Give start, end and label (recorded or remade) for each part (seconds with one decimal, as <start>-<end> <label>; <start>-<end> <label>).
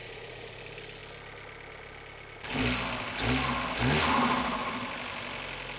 0.0-0.6 remade; 0.6-5.8 recorded